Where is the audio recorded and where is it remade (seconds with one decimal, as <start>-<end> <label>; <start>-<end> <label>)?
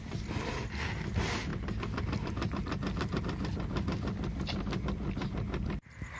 0.0-6.2 recorded